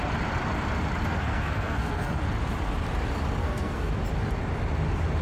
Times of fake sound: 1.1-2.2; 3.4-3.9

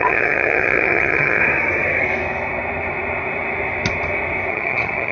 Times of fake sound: 0.0-1.4; 4.5-5.1

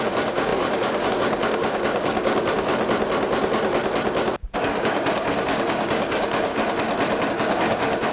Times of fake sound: 0.0-2.7; 4.6-6.5; 7.3-8.1